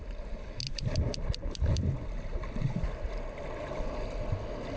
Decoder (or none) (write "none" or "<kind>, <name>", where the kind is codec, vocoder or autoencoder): none